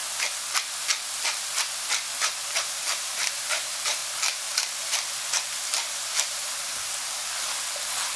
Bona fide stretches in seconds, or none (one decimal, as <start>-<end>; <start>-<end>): 0.0-2.2; 7.2-8.2